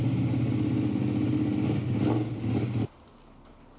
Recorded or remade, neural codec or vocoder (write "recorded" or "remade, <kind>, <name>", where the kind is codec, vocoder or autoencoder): recorded